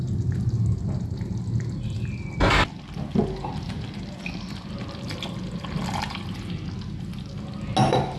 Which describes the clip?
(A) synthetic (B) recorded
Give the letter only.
B